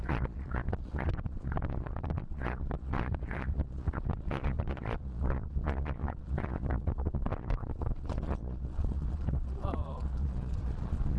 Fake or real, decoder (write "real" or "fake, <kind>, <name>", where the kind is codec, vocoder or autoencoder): fake, vocoder, Vocos